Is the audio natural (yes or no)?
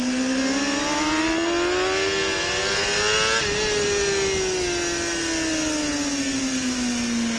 yes